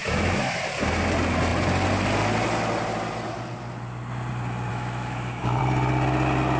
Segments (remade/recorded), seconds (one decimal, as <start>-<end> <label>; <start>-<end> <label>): 0.0-0.6 remade; 0.6-4.7 recorded; 4.7-5.6 remade; 5.6-6.6 recorded